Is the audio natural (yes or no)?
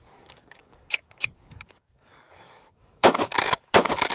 no